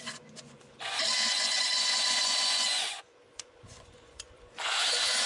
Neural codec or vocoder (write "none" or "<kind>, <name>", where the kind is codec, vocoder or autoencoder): vocoder, Vocos